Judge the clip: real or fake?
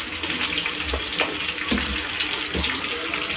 real